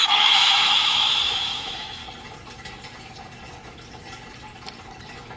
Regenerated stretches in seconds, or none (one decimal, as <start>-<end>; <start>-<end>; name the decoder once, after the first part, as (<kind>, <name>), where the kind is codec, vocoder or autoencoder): 0.0-2.0 (autoencoder, DAC-VAE)